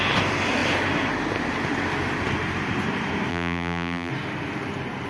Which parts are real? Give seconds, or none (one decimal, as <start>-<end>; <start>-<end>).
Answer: 0.0-3.3; 4.1-5.1